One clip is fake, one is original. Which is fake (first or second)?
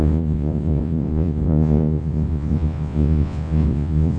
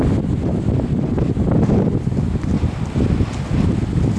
first